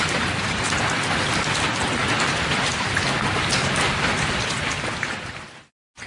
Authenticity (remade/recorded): recorded